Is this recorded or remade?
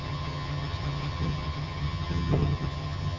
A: remade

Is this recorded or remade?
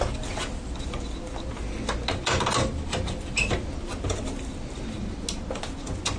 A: recorded